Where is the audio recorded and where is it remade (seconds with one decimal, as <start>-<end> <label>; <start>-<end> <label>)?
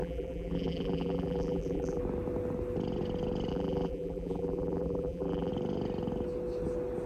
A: 0.0-2.0 remade; 2.0-3.5 recorded; 3.5-5.5 remade; 5.5-7.1 recorded